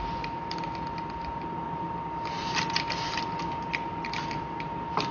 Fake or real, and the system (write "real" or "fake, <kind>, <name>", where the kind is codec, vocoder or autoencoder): real